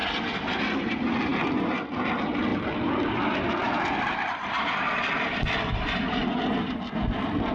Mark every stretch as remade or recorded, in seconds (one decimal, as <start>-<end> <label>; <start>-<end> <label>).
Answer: 0.0-2.5 recorded; 2.5-3.1 remade; 3.1-3.6 recorded; 3.6-6.8 remade; 6.8-7.5 recorded